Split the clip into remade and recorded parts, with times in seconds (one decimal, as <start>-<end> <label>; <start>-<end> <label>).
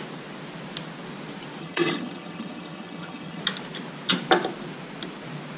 0.0-1.6 recorded; 1.6-3.4 remade; 3.4-5.6 recorded